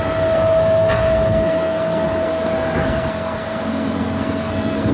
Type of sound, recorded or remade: remade